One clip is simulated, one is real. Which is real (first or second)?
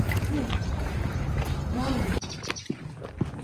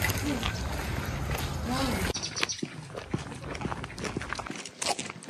second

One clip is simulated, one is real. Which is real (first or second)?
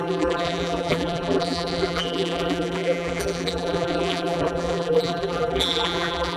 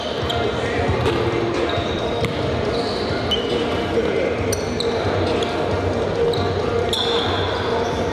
second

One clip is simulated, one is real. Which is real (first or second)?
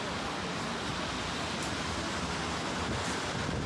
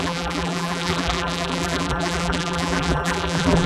first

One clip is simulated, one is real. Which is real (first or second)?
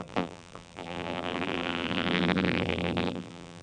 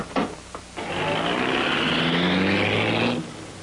second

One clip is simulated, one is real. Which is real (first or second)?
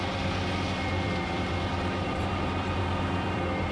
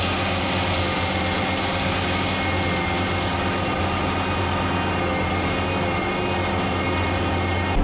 second